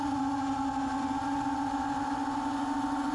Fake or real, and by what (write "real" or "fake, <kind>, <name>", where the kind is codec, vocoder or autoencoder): real